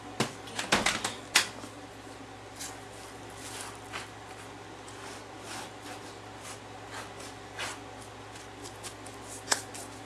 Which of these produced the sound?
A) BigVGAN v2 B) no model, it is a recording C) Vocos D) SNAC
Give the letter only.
B